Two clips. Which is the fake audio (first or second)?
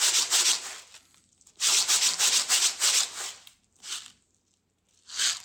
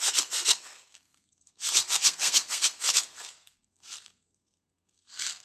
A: second